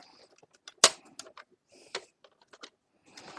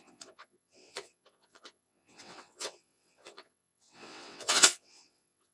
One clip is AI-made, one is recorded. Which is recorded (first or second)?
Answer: first